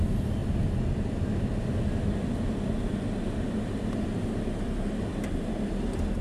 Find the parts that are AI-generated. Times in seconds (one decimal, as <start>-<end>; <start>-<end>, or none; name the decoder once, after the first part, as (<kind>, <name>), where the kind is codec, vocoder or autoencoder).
none